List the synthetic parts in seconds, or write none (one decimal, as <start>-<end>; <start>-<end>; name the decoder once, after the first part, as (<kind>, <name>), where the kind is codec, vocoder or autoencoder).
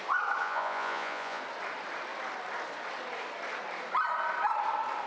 0.4-1.4 (vocoder, Vocos)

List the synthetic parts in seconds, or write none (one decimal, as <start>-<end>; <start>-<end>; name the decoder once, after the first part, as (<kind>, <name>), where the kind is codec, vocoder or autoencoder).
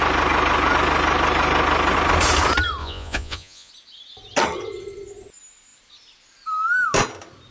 2.8-3.7 (vocoder, Vocos)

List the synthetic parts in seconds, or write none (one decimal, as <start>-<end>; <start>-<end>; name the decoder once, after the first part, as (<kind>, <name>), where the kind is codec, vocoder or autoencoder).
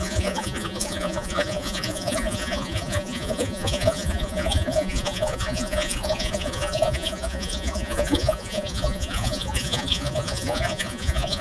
0.0-11.4 (vocoder, Vocos)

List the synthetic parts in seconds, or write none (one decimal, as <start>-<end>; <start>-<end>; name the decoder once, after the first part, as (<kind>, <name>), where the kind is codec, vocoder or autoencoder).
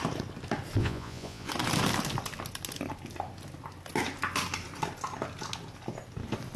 0.8-1.5 (vocoder, Vocos)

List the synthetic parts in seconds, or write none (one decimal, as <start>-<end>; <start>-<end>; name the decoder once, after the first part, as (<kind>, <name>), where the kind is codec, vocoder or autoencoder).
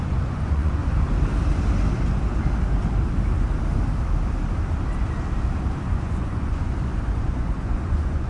0.0-0.8 (vocoder, Vocos); 5.8-8.3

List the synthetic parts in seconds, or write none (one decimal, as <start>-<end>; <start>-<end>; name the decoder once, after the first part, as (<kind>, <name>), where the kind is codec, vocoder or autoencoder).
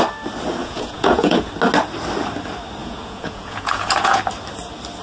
0.6-1.5 (vocoder, Vocos); 2.8-4.2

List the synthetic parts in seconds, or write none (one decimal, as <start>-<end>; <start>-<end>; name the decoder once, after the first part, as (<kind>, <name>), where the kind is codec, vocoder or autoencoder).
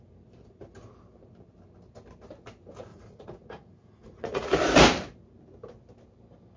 2.9-4.4 (vocoder, Vocos)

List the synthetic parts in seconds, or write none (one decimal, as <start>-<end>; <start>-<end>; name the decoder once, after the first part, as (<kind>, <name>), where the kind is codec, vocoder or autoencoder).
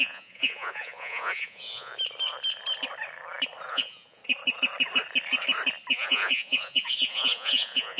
0.0-1.9 (vocoder, Vocos); 3.7-4.2; 5.9-8.0